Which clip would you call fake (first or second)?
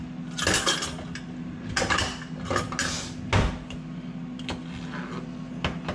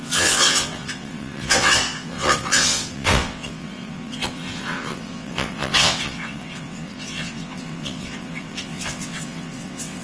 second